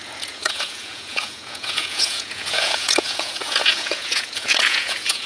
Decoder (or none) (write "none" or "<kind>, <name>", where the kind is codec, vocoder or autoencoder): vocoder, Vocos